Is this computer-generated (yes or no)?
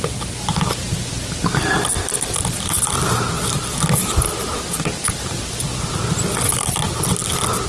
no